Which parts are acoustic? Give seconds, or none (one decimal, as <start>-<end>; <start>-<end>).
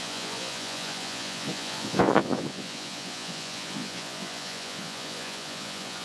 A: none